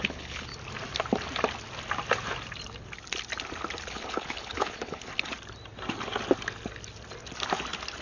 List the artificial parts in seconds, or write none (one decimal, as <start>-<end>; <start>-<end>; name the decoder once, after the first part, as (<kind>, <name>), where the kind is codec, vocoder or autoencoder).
0.0-0.5 (codec, HILCodec); 3.9-5.1